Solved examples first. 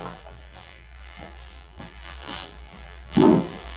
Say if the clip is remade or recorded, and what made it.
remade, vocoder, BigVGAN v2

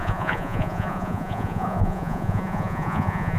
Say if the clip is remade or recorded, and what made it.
remade, vocoder, Vocos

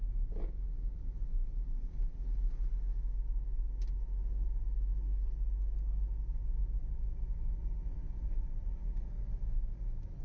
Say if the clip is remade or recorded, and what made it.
recorded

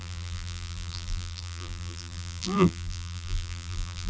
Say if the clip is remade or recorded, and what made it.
remade, vocoder, BigVGAN v2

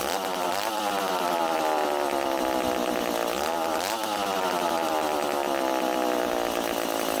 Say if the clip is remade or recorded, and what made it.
recorded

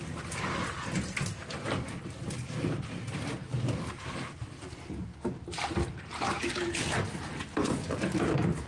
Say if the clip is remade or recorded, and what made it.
recorded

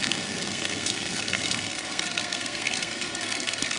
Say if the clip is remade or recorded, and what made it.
remade, codec, SNAC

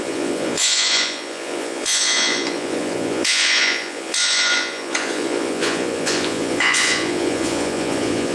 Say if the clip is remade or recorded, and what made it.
remade, vocoder, Vocos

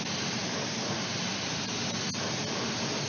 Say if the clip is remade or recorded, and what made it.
recorded